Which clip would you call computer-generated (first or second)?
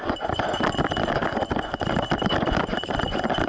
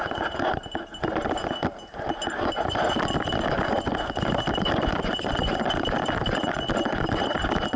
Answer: first